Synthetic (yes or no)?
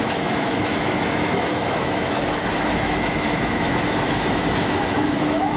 yes